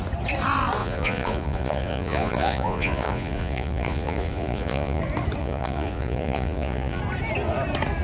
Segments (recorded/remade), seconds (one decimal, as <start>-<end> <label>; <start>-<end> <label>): 0.0-0.8 recorded; 0.8-5.0 remade; 5.0-5.4 recorded; 5.4-7.0 remade; 7.0-8.0 recorded

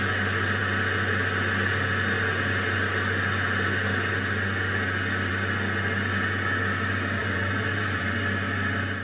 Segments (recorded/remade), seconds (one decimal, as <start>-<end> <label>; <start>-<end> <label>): 0.0-7.2 recorded; 7.2-8.2 remade; 8.2-9.0 recorded

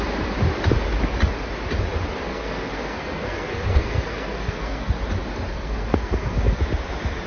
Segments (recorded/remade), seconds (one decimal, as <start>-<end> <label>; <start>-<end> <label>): 0.0-2.3 recorded; 2.3-4.9 remade; 4.9-5.5 recorded; 5.5-6.6 remade; 6.6-7.3 recorded

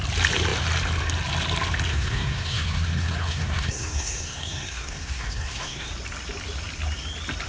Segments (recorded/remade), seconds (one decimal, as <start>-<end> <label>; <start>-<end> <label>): 0.0-1.9 recorded; 1.9-5.9 remade; 5.9-7.5 recorded

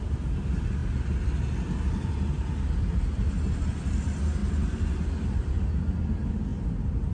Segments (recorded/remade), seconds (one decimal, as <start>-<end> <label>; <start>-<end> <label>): 0.0-7.1 recorded